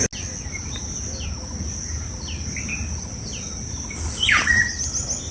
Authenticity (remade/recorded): recorded